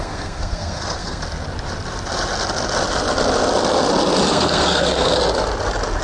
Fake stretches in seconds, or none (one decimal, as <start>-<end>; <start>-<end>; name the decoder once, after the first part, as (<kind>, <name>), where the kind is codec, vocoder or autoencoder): 0.0-1.2 (codec, SNAC); 4.3-5.2